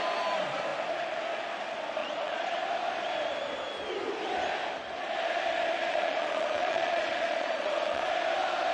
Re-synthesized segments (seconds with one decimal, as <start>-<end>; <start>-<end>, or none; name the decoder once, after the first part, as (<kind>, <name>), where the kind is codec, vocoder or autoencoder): 2.0-2.6 (vocoder, Vocos); 5.8-8.1